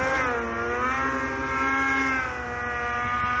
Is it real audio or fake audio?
real